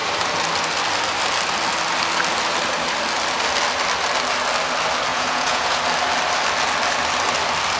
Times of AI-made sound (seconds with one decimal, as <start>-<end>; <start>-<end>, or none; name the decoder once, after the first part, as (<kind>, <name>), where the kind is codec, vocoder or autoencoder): 5.1-5.8 (vocoder, Vocos)